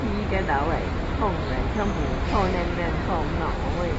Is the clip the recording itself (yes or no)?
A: yes